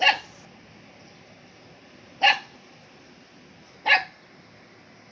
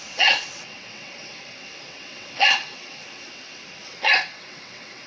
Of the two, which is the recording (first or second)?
first